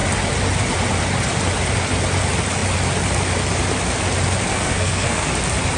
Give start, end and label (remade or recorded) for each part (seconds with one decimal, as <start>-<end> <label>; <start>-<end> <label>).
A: 0.0-4.5 recorded; 4.5-5.3 remade; 5.3-5.8 recorded